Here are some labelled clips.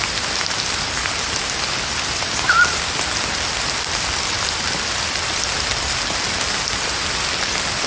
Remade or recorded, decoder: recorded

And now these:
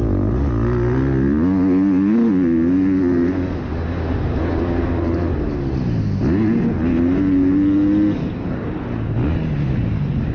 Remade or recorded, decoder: recorded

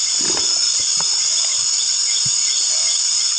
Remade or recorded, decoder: recorded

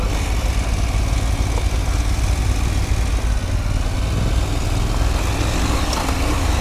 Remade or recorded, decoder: recorded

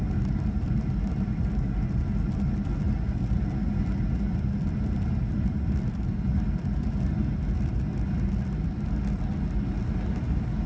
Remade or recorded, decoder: recorded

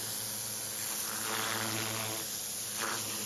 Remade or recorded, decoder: recorded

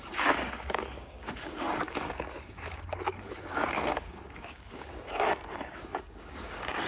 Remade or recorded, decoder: remade, codec, DAC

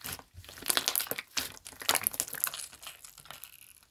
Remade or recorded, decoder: recorded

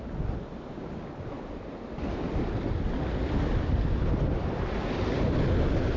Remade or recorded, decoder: recorded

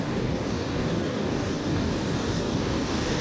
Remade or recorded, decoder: remade, codec, DAC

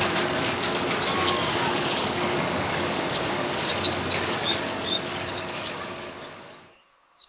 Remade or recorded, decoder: remade, codec, DAC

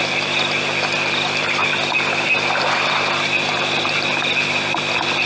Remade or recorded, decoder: recorded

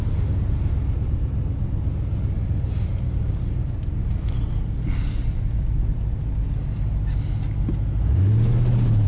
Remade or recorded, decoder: recorded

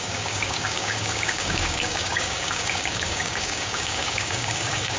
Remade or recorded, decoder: remade, codec, DAC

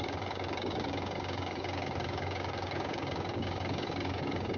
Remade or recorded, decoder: remade, codec, DAC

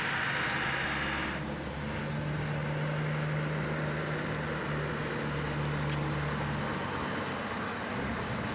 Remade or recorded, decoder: recorded